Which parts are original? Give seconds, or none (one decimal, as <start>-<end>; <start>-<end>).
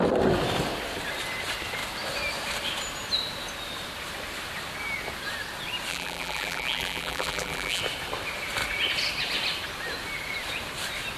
0.0-5.9; 7.8-11.2